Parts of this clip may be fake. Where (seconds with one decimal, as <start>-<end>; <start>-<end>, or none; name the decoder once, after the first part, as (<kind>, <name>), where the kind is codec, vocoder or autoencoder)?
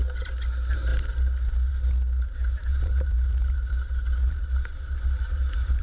2.7-5.8 (vocoder, BigVGAN v2)